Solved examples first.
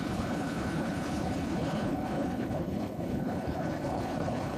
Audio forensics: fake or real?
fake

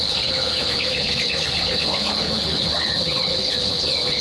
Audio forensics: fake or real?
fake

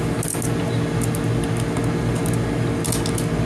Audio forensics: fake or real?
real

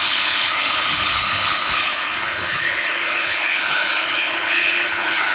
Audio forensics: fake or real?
fake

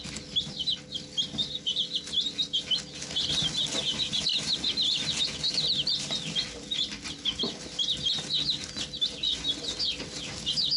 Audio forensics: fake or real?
real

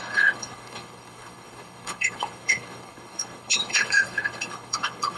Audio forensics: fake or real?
fake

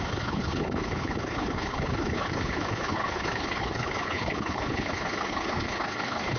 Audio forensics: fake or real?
fake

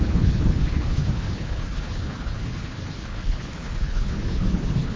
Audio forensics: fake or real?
fake